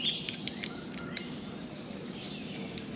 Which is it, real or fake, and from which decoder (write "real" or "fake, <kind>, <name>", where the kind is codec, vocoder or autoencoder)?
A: real